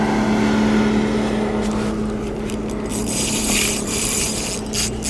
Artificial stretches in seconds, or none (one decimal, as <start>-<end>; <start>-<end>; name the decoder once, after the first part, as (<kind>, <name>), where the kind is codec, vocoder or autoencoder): 2.9-4.5 (vocoder, BigVGAN v2)